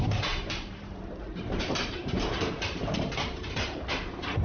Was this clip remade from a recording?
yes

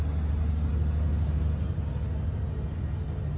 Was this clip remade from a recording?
no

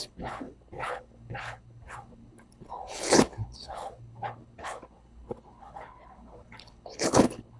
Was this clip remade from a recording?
yes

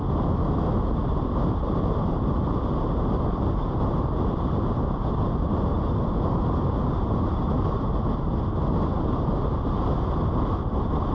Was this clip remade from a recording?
no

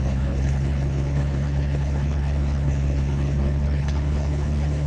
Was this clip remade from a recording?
yes